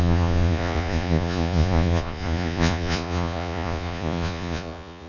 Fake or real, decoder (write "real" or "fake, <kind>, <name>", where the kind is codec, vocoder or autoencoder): fake, vocoder, Vocos